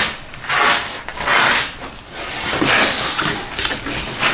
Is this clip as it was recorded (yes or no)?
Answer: yes